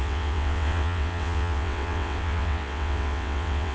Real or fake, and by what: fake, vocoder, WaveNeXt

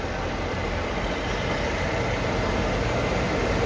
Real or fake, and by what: real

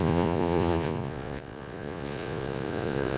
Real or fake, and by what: fake, vocoder, Vocos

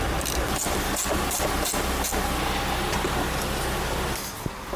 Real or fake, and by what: real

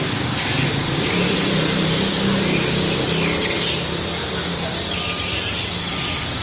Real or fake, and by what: real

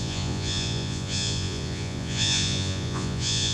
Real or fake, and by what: fake, vocoder, Vocos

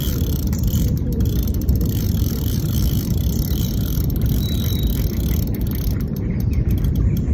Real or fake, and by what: fake, vocoder, BigVGAN v2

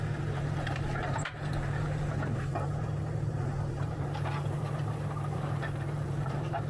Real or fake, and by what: fake, vocoder, BigVGAN v2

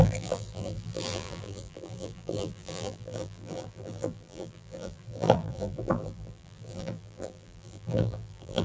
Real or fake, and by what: fake, vocoder, BigVGAN v2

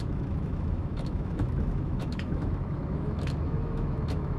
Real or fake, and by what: fake, autoencoder, DAC-VAE